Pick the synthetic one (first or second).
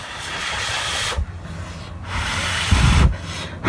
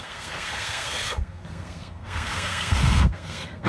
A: second